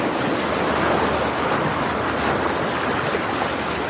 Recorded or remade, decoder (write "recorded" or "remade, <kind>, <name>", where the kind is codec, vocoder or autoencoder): recorded